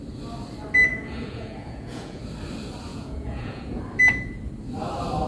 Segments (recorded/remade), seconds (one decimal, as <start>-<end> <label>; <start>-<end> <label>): 0.0-0.9 recorded; 0.9-2.2 remade; 2.2-2.9 recorded; 2.9-3.8 remade; 3.8-5.3 recorded